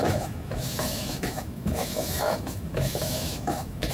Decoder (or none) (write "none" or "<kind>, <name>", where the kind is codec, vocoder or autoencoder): autoencoder, DAC-VAE